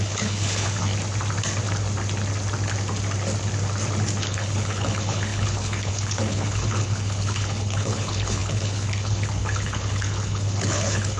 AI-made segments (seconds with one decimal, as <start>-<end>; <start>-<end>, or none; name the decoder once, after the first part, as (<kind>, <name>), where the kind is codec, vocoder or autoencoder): 0.0-0.9 (codec, HILCodec); 4.2-11.2